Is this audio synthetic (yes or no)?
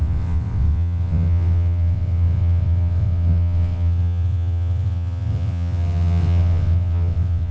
yes